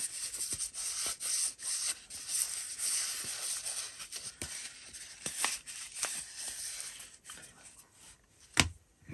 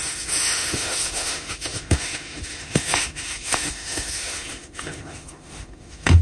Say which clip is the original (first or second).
first